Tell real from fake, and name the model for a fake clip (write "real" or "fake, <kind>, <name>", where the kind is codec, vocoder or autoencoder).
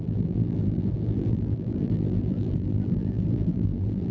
fake, vocoder, BigVGAN v2